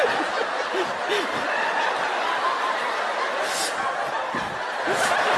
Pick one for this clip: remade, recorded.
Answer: recorded